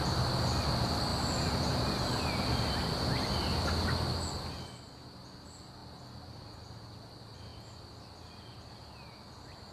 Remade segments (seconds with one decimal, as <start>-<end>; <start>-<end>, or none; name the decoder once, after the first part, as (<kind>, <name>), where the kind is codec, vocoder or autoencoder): none